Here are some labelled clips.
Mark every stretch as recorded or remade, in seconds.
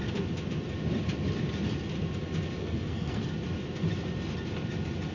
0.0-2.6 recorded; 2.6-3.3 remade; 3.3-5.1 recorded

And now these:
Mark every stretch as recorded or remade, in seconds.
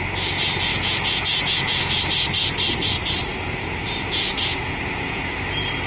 0.0-0.7 recorded; 0.7-2.0 remade; 2.0-3.3 recorded; 3.3-5.2 remade; 5.2-5.9 recorded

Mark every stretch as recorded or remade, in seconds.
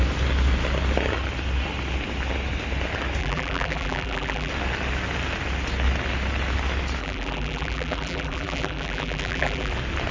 0.0-3.2 recorded; 3.2-4.5 remade; 4.5-7.0 recorded; 7.0-9.7 remade; 9.7-10.1 recorded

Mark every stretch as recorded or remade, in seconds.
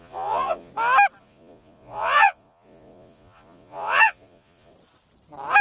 0.0-0.7 remade; 0.7-1.2 recorded; 1.2-4.7 remade; 4.7-5.6 recorded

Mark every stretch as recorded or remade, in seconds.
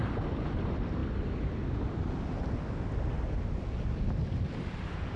0.0-5.2 recorded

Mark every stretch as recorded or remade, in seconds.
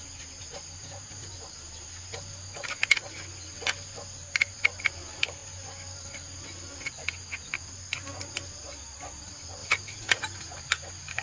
0.0-11.2 recorded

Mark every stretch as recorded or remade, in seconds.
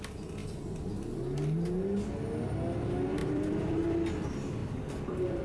0.0-0.4 recorded; 0.4-0.9 remade; 0.9-3.2 recorded; 3.2-3.8 remade; 3.8-5.4 recorded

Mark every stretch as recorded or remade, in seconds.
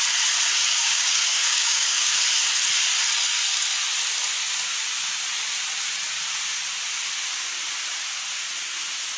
0.0-0.6 recorded; 0.6-2.2 remade; 2.2-9.2 recorded